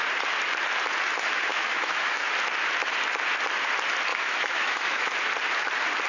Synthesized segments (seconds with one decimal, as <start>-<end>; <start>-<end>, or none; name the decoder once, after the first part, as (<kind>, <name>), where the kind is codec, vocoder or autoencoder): 1.5-2.3 (autoencoder, DAC-VAE); 4.1-5.2